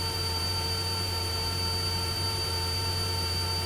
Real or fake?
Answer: fake